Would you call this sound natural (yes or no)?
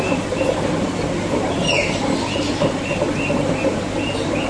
yes